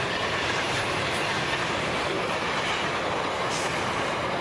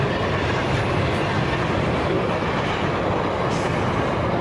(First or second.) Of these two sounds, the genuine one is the second